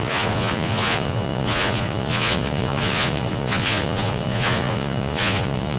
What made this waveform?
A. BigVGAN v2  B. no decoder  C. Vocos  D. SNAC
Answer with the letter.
C